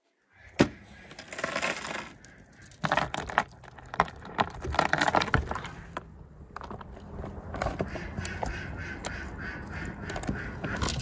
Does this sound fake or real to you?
real